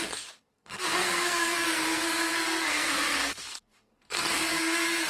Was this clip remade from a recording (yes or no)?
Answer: yes